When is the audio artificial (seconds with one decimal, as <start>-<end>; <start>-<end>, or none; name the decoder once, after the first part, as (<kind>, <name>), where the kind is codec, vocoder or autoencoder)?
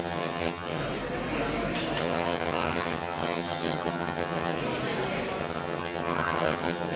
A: 0.0-0.8 (vocoder, HiFi-GAN); 2.0-4.6; 5.4-7.0